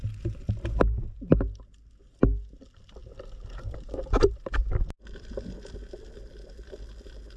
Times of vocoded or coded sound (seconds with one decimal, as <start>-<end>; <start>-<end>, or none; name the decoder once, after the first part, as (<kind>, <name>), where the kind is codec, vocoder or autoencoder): 0.0-1.0 (vocoder, BigVGAN v2); 3.0-4.7